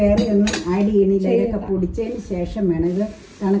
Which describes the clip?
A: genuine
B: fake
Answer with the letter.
A